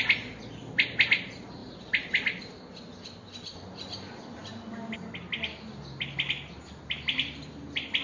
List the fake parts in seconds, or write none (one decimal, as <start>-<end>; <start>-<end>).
1.6-2.4